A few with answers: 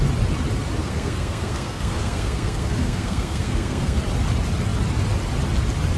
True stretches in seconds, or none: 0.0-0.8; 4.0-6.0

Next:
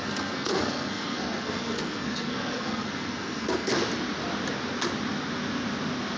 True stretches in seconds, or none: 3.7-6.2

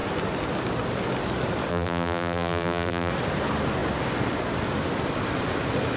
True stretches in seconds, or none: 0.0-1.7; 3.1-6.0

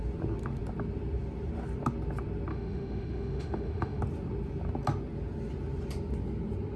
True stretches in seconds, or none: 0.0-2.5; 4.0-6.8

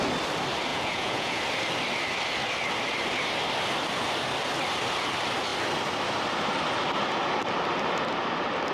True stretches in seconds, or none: 0.0-0.7; 1.4-8.7

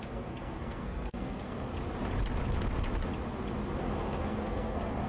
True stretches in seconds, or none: 1.7-3.8

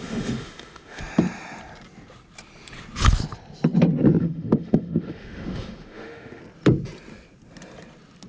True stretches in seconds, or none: 1.0-4.2; 6.4-8.3